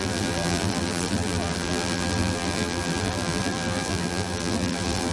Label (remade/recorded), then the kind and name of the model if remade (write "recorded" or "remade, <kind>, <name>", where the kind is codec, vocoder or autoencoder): remade, vocoder, BigVGAN v2